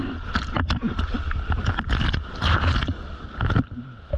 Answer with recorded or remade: recorded